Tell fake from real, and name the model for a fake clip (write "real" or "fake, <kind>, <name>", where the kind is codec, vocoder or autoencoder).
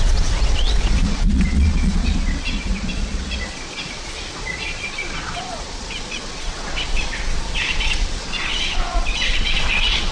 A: fake, vocoder, Vocos